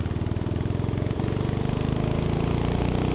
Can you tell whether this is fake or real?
real